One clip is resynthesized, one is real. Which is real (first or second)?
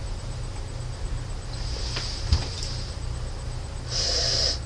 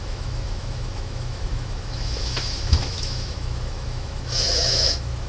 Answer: first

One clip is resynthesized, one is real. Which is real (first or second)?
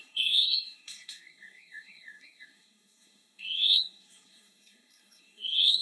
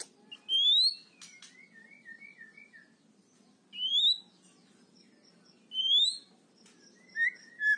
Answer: second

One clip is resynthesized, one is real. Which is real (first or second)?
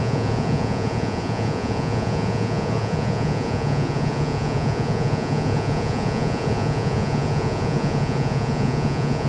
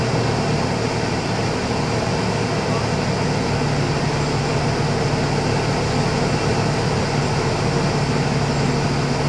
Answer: second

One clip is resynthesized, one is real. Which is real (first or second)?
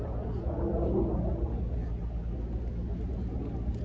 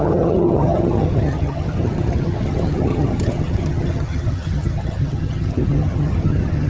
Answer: first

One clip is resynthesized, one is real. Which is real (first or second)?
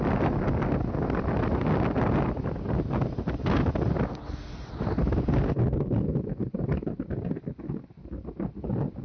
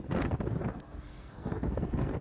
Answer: first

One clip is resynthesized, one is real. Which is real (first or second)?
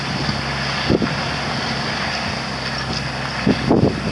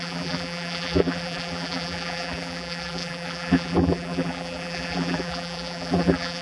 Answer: first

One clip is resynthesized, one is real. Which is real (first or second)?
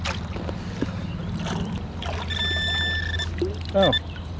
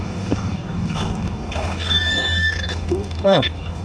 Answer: first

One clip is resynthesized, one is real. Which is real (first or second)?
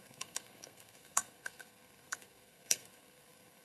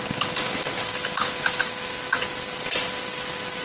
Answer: second